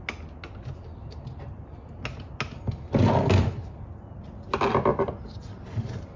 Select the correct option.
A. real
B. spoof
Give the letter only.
A